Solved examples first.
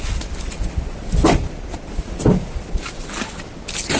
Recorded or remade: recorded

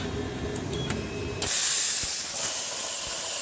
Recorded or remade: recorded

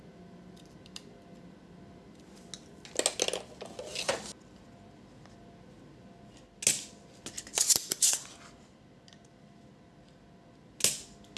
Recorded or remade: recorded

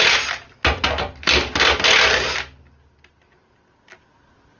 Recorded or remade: recorded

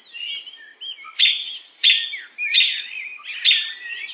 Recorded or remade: recorded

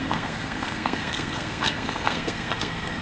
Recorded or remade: remade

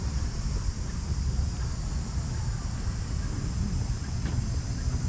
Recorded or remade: recorded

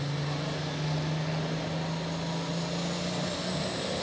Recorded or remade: recorded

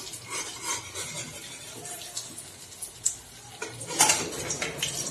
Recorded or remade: recorded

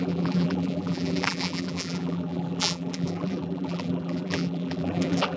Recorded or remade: remade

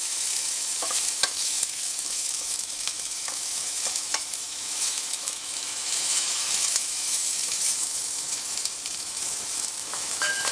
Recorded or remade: remade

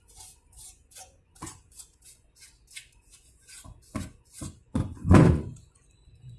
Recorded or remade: remade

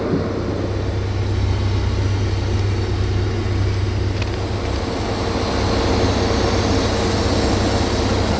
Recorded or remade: recorded